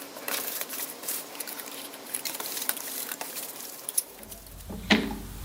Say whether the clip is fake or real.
fake